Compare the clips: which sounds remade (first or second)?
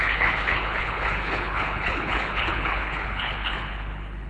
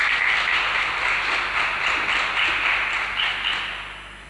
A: first